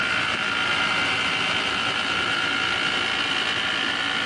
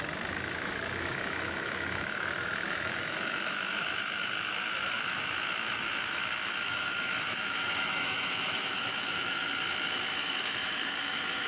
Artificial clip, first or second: second